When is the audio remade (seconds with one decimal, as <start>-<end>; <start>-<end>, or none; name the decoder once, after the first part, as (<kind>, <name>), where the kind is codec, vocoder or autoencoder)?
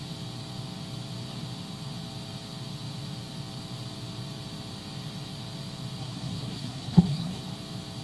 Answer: 6.0-7.4 (codec, SNAC)